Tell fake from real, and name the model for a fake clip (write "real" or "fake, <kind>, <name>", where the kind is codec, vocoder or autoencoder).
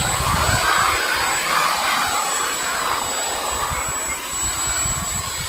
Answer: real